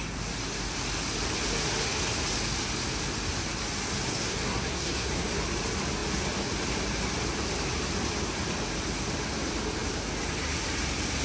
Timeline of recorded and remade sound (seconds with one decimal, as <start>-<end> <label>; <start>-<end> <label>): 0.0-4.1 recorded; 4.1-5.3 remade; 5.3-11.2 recorded